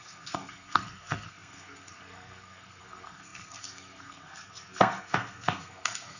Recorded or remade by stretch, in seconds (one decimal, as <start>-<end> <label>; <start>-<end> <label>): 0.0-6.2 remade